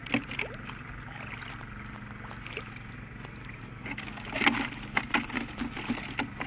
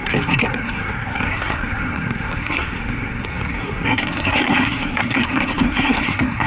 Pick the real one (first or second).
first